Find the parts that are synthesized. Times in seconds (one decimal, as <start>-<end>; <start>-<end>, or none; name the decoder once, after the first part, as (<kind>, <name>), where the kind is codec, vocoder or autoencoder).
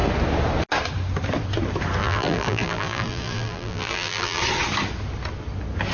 2.0-4.4 (vocoder, BigVGAN v2)